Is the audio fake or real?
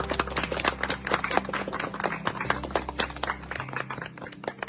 real